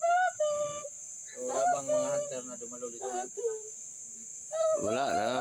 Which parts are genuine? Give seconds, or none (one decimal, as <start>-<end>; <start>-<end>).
0.0-5.4